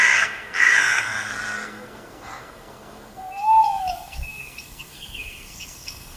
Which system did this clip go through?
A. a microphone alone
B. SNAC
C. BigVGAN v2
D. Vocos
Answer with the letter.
B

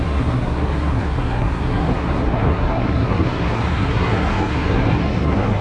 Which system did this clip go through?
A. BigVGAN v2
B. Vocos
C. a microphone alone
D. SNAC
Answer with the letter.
D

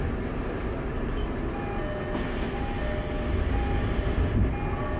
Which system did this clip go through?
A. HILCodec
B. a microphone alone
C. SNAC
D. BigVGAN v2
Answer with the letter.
B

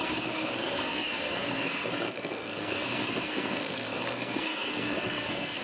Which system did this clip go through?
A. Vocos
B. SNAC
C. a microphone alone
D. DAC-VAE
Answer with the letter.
B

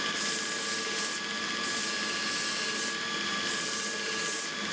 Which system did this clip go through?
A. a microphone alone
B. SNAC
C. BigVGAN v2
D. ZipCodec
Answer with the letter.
A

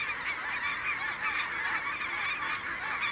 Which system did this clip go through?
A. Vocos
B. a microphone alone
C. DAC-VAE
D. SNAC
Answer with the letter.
B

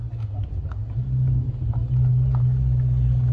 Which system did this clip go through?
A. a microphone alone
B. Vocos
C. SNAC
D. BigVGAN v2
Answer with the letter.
A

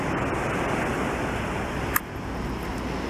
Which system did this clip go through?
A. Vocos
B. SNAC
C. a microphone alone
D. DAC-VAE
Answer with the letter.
C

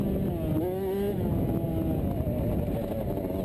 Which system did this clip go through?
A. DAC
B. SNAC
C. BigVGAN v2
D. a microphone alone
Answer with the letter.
D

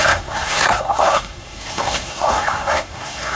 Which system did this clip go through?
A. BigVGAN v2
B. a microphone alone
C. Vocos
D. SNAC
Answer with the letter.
D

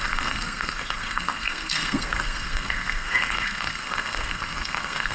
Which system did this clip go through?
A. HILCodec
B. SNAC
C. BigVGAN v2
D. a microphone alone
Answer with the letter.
B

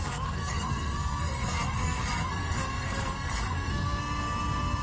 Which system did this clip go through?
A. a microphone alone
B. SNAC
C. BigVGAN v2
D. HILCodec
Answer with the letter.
B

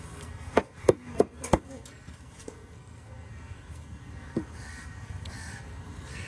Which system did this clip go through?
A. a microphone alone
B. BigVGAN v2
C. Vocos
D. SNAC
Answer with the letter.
D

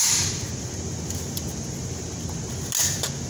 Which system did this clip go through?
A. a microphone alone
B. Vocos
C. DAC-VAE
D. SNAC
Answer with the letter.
A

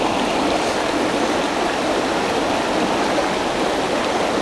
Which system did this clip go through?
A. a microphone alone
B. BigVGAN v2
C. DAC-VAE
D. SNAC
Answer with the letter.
A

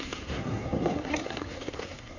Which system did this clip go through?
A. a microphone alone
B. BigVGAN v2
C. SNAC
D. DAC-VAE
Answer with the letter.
C